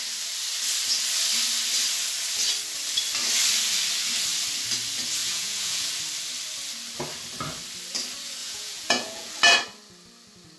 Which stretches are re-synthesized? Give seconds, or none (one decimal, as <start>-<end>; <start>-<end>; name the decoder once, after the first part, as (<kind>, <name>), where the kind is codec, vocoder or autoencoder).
5.2-5.9 (vocoder, Vocos); 8.4-9.3